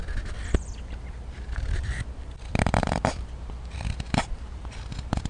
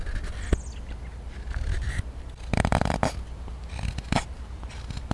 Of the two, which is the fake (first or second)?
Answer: first